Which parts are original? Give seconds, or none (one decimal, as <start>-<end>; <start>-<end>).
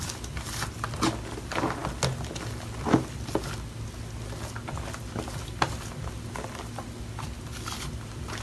0.0-8.4